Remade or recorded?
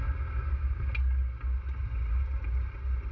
recorded